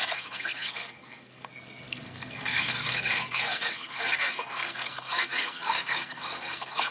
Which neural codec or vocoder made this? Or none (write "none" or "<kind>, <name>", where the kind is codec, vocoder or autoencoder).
codec, SNAC